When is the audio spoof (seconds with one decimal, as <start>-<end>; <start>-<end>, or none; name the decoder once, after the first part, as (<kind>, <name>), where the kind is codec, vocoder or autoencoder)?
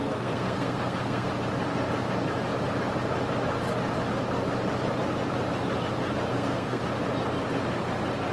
0.0-1.3 (codec, SNAC); 6.3-6.8